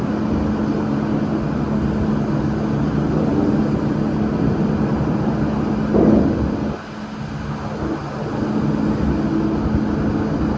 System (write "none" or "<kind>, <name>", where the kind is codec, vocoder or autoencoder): none